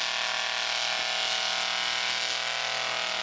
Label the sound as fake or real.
real